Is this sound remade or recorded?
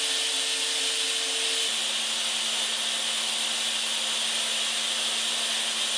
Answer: recorded